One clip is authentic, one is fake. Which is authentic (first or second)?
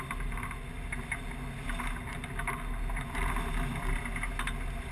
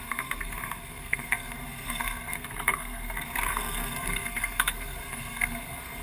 first